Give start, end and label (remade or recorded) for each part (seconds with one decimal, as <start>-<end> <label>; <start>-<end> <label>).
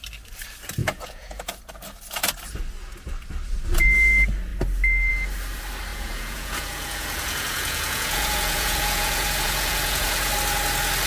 0.0-0.8 recorded; 0.8-1.7 remade; 1.7-5.9 recorded; 5.9-10.3 remade; 10.3-11.1 recorded